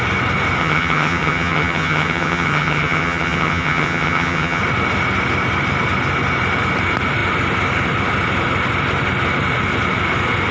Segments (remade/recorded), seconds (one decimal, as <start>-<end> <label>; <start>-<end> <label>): 0.0-0.6 recorded; 0.6-4.6 remade; 4.6-10.5 recorded